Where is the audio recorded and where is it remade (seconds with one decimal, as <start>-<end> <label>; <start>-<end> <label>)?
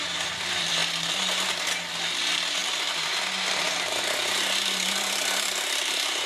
0.0-0.8 remade; 0.8-2.1 recorded; 2.1-2.6 remade; 2.6-3.6 recorded; 3.6-6.3 remade